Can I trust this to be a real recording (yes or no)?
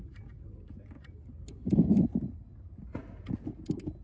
yes